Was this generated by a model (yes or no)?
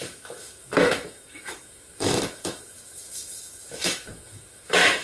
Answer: yes